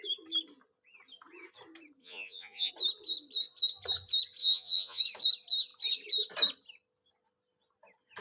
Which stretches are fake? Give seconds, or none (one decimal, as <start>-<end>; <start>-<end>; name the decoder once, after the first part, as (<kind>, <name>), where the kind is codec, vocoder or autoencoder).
2.0-2.7 (vocoder, Vocos); 4.4-5.0

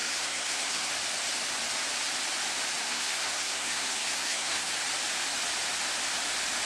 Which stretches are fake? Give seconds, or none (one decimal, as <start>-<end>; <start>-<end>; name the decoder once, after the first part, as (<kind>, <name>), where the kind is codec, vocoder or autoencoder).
0.0-0.9 (codec, SNAC); 2.8-4.7

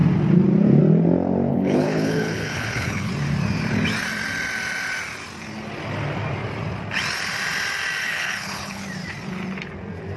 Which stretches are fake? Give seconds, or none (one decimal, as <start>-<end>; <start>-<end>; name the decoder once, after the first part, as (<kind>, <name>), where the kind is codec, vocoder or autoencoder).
1.5-3.1 (codec, HILCodec); 8.0-8.8

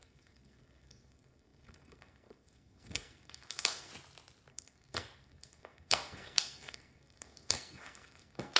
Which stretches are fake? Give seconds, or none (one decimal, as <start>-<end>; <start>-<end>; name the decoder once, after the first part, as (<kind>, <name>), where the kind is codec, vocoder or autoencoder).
0.0-3.9 (codec, SNAC); 4.5-8.6

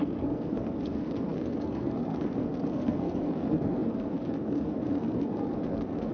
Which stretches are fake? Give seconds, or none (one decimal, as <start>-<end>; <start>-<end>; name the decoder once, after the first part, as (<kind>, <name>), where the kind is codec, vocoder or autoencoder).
0.0-6.1 (codec, SNAC)

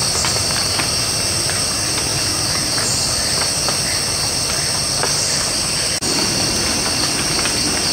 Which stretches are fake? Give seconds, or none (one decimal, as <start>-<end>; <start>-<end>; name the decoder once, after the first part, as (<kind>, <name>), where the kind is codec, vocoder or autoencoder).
2.1-6.0 (vocoder, BigVGAN v2)

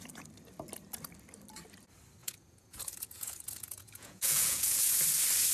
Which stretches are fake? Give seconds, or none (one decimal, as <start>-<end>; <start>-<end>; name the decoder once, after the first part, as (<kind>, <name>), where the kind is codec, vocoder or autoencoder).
2.2-5.0 (vocoder, Vocos)

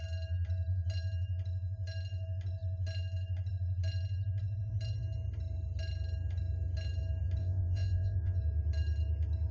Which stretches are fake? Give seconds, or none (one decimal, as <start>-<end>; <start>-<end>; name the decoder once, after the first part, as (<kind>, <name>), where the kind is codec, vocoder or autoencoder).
7.4-8.4 (vocoder, Vocos)